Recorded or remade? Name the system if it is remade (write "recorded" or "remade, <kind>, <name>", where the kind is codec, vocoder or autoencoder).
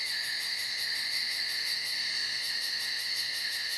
remade, autoencoder, DAC-VAE